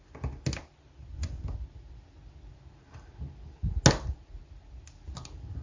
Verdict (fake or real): real